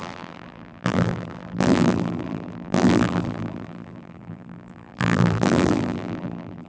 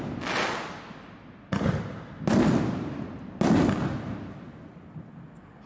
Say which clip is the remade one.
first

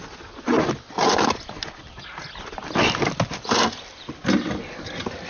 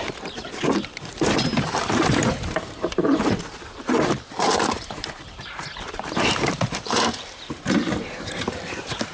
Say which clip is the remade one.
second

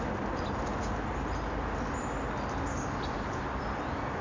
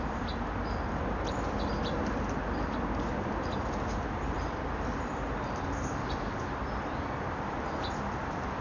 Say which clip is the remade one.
second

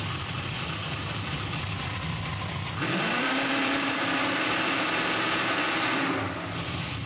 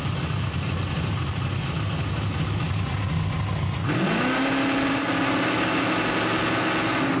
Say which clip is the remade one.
first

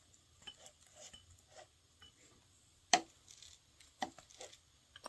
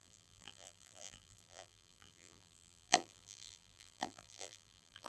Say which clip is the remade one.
second